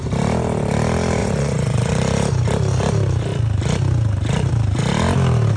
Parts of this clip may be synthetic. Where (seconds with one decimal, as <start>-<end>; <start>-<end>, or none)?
1.2-1.9